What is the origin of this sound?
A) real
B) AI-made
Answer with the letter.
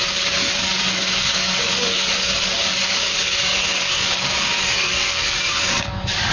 B